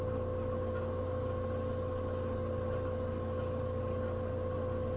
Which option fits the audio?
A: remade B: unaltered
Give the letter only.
B